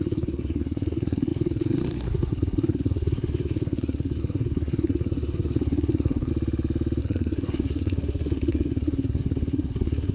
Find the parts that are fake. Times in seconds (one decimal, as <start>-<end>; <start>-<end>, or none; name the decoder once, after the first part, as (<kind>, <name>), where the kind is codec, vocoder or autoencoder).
0.0-6.3 (codec, SNAC); 7.0-10.1